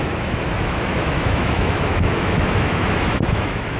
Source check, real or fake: fake